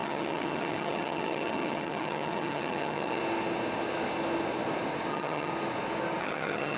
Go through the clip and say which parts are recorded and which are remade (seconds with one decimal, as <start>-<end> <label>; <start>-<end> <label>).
0.0-3.2 remade; 3.2-5.1 recorded; 5.1-5.5 remade; 5.5-6.2 recorded; 6.2-6.8 remade